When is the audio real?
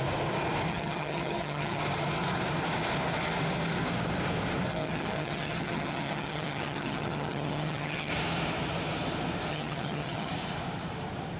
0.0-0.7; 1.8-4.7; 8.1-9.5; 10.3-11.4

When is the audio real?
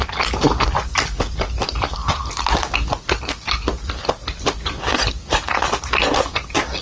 0.0-6.8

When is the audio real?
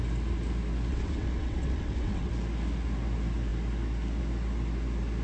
0.0-0.9; 2.3-5.2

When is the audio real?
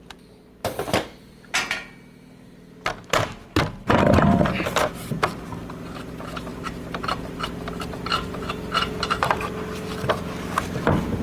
0.0-6.5; 8.5-11.2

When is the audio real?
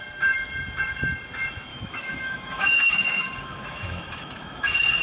0.0-1.7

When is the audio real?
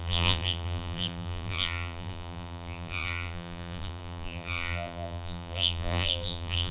none